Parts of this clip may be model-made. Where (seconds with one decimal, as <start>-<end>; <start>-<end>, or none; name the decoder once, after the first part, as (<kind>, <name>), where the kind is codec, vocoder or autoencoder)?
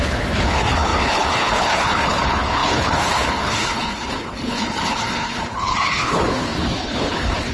0.0-7.5 (codec, HILCodec)